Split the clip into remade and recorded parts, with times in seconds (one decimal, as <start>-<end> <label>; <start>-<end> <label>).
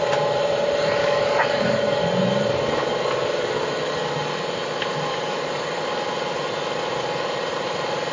0.0-1.0 recorded; 1.0-2.0 remade; 2.0-5.1 recorded; 5.1-5.8 remade; 5.8-8.1 recorded